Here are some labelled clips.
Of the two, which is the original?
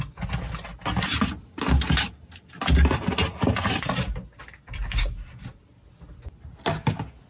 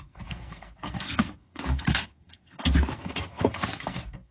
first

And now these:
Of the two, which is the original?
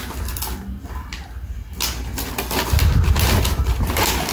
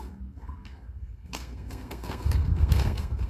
first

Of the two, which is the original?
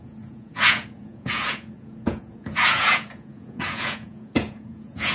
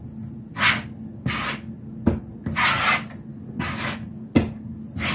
second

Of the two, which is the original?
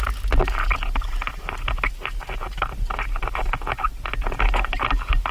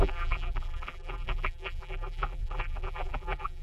first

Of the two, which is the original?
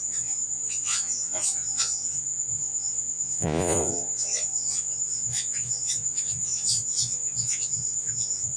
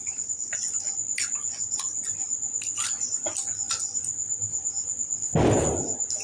second